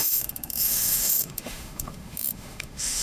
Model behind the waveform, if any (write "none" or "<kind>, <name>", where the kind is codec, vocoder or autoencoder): autoencoder, DAC-VAE